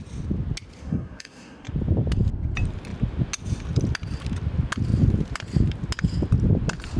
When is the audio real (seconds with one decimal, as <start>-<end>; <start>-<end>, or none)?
0.0-0.8; 1.7-7.0